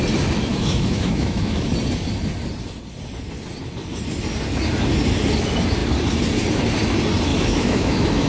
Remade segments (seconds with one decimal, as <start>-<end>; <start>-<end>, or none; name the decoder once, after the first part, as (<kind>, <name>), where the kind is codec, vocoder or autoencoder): 0.5-1.7 (autoencoder, DAC-VAE); 7.3-8.3